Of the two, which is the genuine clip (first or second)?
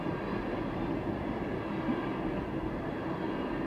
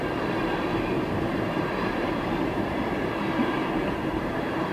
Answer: first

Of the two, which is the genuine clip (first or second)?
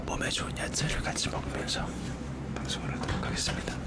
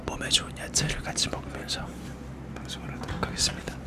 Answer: second